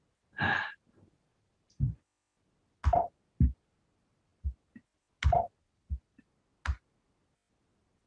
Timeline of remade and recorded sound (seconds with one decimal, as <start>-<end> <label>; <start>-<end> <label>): 0.0-8.1 recorded